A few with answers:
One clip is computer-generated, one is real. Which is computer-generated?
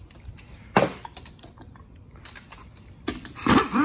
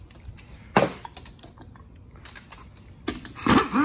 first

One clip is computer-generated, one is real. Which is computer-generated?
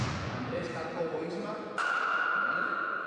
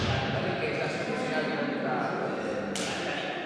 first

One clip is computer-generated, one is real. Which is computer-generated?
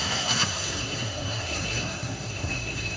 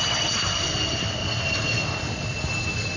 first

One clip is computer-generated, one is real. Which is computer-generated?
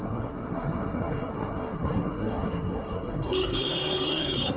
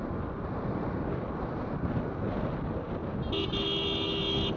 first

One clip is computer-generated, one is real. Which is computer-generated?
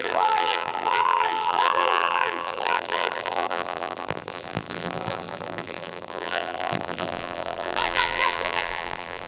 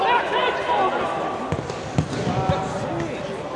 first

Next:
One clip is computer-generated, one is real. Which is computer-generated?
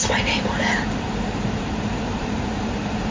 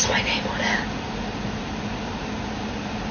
first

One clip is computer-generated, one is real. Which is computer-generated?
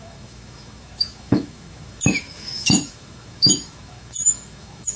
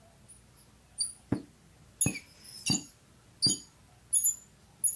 first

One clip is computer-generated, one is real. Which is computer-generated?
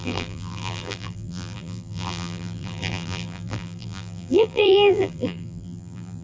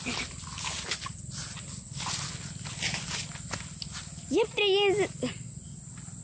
first